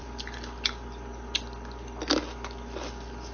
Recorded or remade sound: recorded